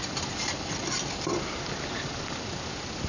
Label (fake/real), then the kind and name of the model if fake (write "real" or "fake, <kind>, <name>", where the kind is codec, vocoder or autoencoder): real